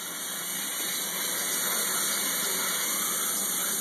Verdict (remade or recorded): recorded